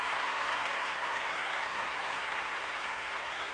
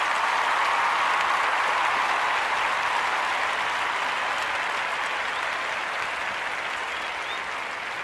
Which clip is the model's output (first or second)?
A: first